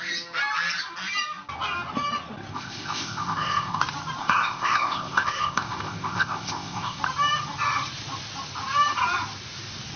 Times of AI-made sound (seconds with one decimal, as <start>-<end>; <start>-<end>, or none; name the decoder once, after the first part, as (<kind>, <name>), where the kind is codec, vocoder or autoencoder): 2.5-3.8 (codec, ZipCodec); 4.2-7.0